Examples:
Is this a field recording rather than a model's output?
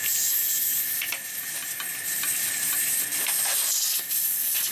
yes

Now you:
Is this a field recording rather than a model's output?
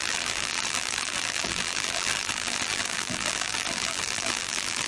no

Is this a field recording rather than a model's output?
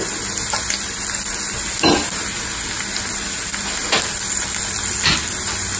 yes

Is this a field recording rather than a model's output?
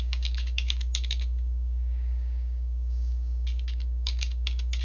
no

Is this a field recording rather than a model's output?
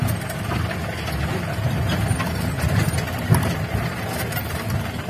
yes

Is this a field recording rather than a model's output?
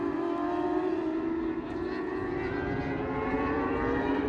yes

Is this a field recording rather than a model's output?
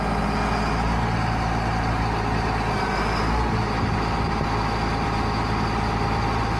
yes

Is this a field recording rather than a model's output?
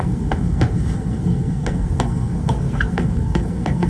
no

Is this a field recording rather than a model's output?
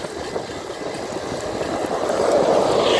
yes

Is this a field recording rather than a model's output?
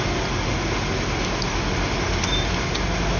yes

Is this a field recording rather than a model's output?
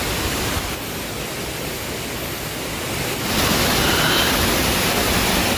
yes